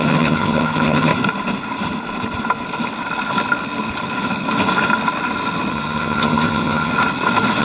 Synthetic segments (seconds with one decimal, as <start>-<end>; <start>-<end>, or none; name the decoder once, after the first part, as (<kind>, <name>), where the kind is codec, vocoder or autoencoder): 0.0-1.1 (vocoder, HiFi-GAN); 5.7-6.9